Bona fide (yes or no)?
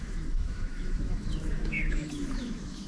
no